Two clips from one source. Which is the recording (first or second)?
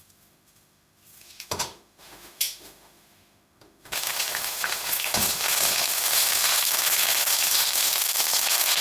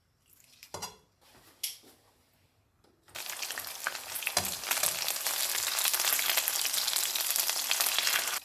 second